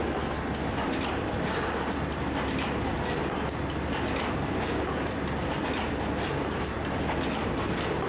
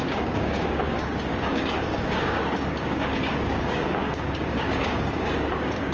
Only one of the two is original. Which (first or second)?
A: first